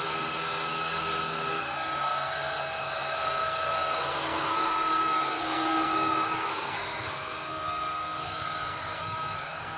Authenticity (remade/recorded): remade